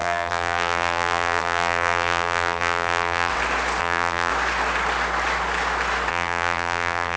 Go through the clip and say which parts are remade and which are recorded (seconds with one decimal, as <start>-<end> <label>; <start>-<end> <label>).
0.0-3.3 remade; 3.3-3.8 recorded; 3.8-4.3 remade; 4.3-6.1 recorded; 6.1-7.2 remade